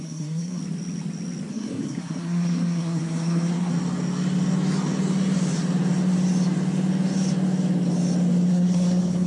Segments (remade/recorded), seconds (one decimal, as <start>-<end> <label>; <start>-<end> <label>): 0.0-0.6 remade; 0.6-1.5 recorded; 1.5-3.7 remade; 3.7-8.5 recorded; 8.5-9.3 remade